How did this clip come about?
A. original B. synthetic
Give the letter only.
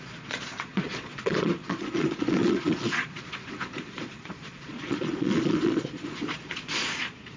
B